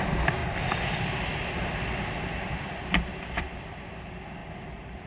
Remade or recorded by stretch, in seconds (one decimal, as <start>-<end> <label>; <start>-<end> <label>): 0.0-4.4 recorded; 4.4-5.1 remade